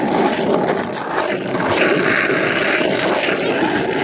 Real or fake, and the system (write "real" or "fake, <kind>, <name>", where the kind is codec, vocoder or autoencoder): real